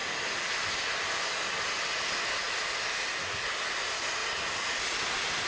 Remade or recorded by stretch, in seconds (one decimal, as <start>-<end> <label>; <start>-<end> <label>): 0.0-5.5 recorded